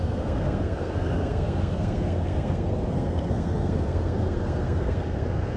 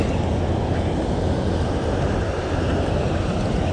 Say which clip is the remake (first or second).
first